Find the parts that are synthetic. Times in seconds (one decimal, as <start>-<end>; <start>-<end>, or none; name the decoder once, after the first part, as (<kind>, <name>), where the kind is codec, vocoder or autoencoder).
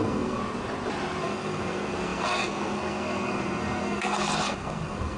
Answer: 0.0-0.4 (codec, SNAC); 1.2-5.2